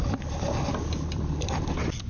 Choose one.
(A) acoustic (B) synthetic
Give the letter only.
A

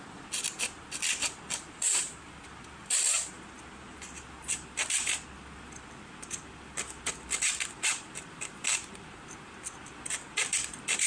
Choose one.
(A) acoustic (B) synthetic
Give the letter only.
B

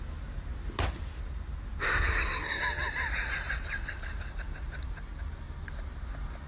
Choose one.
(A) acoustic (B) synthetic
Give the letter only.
A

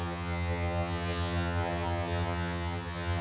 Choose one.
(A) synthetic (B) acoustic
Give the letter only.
A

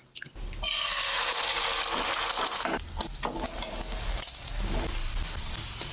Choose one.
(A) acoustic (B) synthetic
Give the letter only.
A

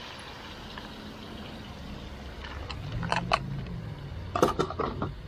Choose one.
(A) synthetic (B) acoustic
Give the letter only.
B